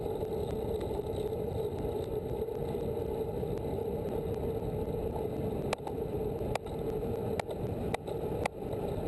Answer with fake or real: real